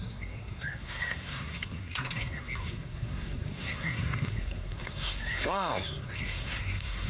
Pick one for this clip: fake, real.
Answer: fake